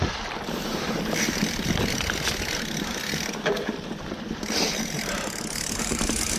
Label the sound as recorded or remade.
remade